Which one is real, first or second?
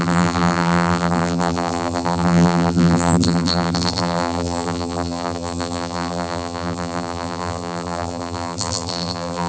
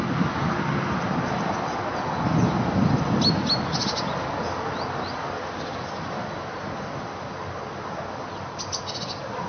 second